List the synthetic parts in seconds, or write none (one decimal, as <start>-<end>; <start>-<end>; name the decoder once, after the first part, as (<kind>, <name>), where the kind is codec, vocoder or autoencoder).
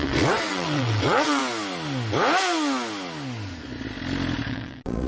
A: 0.0-1.4 (vocoder, WaveNeXt); 4.5-5.1